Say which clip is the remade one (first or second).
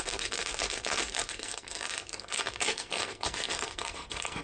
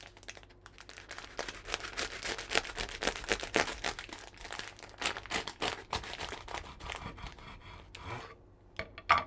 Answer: first